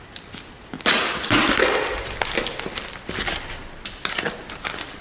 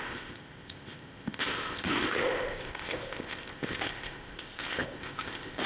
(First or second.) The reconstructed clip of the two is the second